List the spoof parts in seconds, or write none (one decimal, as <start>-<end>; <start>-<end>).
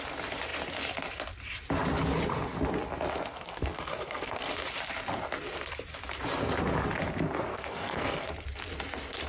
3.3-4.5; 7.5-8.3